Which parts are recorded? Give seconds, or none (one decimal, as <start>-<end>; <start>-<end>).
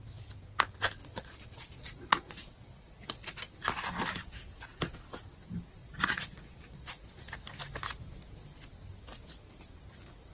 0.0-1.0; 3.4-5.8; 7.1-10.3